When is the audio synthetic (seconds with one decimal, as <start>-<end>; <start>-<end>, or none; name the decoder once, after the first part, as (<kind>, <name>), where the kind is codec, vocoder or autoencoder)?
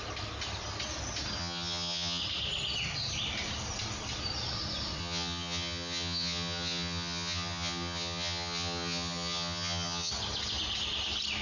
1.4-2.2 (vocoder, HiFi-GAN); 5.0-10.1